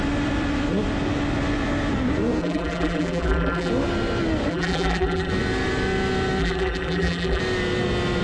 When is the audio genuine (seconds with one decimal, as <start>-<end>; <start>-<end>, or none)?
0.0-2.4; 3.7-4.5; 5.3-6.4; 7.4-8.2